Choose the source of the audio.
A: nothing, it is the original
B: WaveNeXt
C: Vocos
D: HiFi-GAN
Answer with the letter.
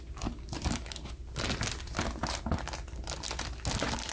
A